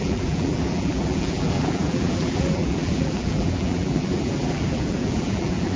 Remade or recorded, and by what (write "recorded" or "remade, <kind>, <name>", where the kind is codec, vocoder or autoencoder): remade, vocoder, BigVGAN v2